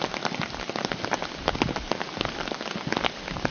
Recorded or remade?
recorded